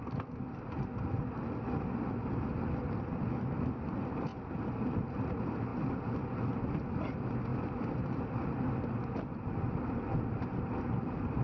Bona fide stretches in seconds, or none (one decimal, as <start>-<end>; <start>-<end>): 0.0-0.9; 1.4-7.5; 8.2-11.4